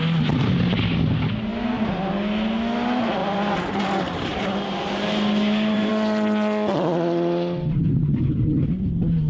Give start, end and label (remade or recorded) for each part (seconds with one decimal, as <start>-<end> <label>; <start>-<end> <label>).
0.0-3.2 recorded; 3.2-5.9 remade; 5.9-9.3 recorded